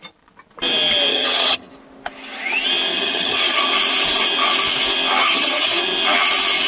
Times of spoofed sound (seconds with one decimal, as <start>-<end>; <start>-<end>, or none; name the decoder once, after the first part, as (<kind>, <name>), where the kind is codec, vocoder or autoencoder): 1.1-1.7 (vocoder, HiFi-GAN); 2.9-3.6; 5.2-5.7

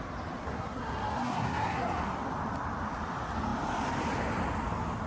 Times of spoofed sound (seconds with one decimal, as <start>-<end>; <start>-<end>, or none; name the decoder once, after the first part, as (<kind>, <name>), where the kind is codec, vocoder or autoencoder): 0.4-2.1 (codec, SNAC)

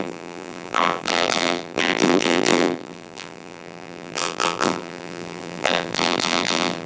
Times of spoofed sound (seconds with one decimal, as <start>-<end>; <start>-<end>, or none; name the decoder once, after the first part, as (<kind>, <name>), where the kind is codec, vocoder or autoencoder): 0.0-6.9 (vocoder, BigVGAN v2)

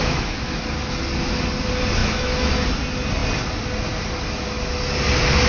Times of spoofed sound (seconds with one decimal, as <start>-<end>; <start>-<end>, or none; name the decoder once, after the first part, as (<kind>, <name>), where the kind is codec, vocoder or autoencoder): 0.0-0.6 (autoencoder, DAC-VAE); 2.0-2.5

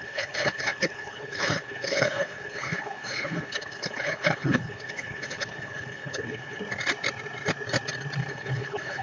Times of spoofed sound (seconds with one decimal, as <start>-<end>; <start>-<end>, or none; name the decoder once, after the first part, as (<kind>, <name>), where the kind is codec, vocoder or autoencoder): 0.0-6.6 (codec, HILCodec); 8.3-9.0

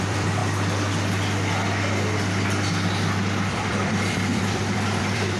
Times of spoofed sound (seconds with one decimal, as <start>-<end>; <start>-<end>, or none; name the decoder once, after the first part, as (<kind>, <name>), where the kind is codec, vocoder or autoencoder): 0.0-0.4 (vocoder, BigVGAN v2); 3.5-5.4

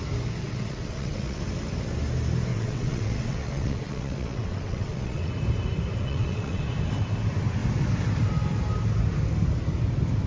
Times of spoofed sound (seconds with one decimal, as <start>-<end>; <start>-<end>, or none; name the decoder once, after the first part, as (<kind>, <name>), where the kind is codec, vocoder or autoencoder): 0.4-1.4 (vocoder, WaveNeXt); 2.5-5.3; 6.0-6.6